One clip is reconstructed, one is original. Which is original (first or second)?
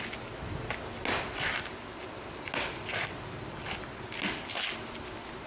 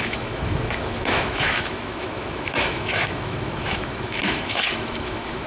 first